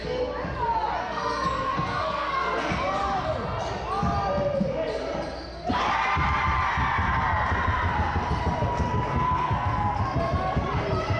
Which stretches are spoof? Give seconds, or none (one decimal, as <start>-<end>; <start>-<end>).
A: 1.0-2.7; 9.1-10.0